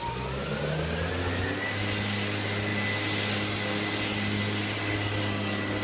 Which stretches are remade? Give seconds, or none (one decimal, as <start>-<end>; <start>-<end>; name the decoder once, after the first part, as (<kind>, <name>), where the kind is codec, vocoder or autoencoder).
none